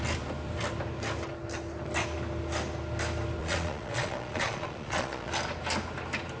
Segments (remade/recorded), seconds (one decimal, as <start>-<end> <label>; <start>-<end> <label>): 0.0-3.4 recorded; 3.4-5.3 remade; 5.3-6.4 recorded